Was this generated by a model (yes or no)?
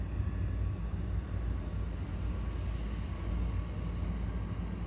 no